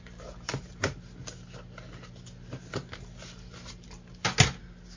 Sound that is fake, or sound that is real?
real